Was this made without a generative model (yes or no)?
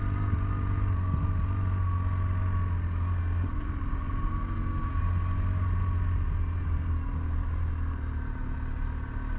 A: yes